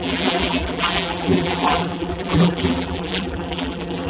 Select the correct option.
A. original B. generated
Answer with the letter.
B